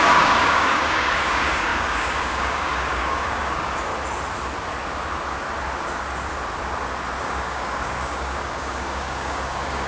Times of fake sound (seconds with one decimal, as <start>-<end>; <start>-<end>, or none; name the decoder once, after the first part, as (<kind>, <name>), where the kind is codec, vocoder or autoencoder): 0.0-3.9 (codec, DAC); 7.2-9.9